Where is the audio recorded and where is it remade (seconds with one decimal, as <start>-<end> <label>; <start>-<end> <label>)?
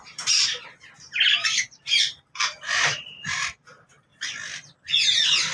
0.0-0.5 remade; 0.5-2.0 recorded; 2.0-4.1 remade; 4.1-5.1 recorded; 5.1-5.5 remade